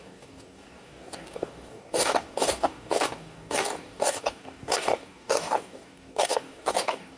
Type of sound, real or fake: fake